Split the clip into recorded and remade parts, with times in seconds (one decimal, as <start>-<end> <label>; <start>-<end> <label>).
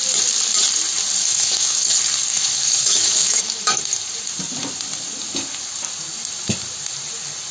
0.0-1.2 recorded; 1.2-1.9 remade; 1.9-2.3 recorded; 2.3-3.8 remade; 3.8-7.5 recorded